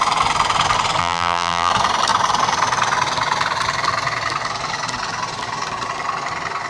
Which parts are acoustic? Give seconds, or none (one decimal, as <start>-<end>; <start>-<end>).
0.0-1.0; 1.7-6.7